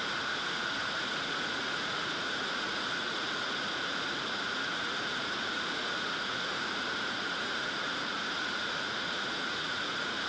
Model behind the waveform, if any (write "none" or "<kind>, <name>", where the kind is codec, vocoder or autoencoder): vocoder, Vocos